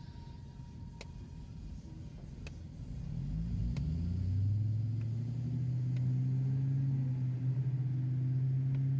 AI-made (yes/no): no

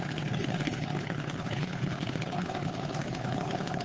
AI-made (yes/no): yes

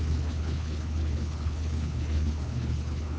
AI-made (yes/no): yes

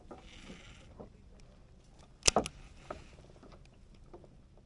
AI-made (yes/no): no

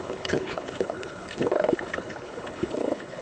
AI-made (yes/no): yes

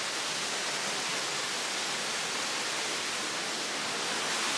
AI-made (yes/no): no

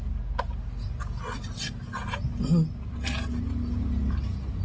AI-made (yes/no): no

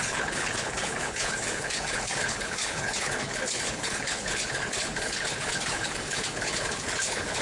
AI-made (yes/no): yes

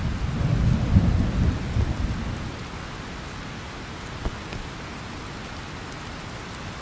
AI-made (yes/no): no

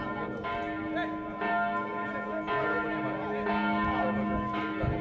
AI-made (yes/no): no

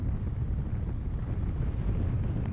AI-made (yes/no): no